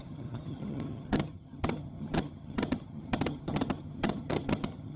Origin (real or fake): fake